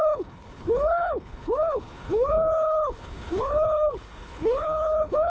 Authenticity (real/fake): fake